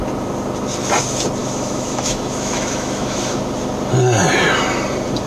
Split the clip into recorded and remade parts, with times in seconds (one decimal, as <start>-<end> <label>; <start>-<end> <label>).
0.0-1.4 recorded; 1.4-3.4 remade; 3.4-5.3 recorded